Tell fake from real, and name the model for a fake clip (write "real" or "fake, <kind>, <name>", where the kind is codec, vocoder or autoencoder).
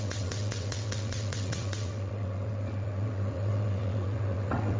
fake, vocoder, WaveNeXt